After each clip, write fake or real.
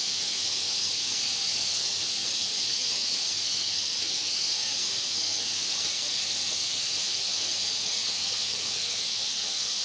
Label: fake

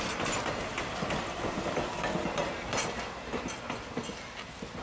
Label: real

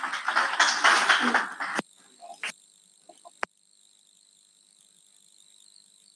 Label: real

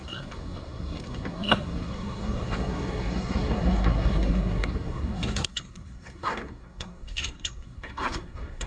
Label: fake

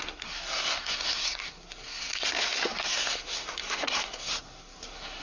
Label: fake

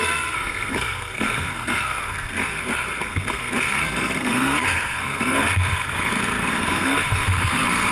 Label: fake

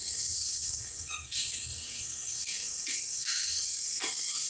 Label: fake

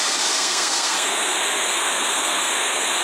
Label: fake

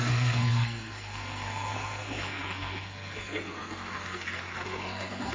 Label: fake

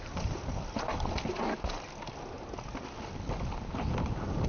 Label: real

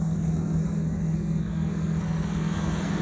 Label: fake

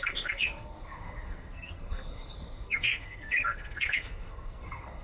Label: fake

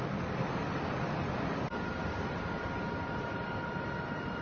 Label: real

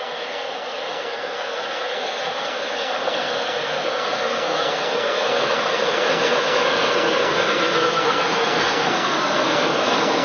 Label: fake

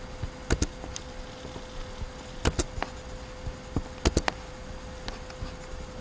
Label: real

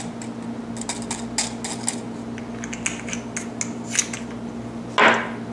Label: real